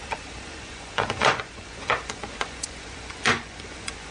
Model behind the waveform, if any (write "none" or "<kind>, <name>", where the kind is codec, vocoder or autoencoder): vocoder, Vocos